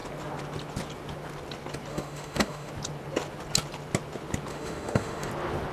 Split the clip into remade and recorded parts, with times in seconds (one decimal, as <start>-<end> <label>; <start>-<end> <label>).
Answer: 0.0-1.9 recorded; 1.9-2.7 remade; 2.7-4.5 recorded; 4.5-5.3 remade; 5.3-5.7 recorded